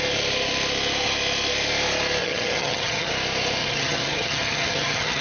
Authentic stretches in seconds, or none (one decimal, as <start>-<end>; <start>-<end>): 0.0-2.2; 3.1-3.6